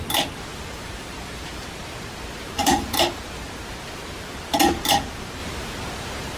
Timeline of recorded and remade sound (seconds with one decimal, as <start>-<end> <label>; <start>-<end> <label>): 0.0-0.5 recorded; 0.5-1.7 remade; 1.7-2.6 recorded; 2.6-3.2 remade; 3.2-6.4 recorded